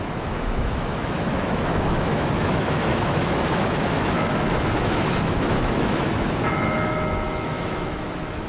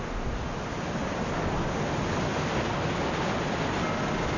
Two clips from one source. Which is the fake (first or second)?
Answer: first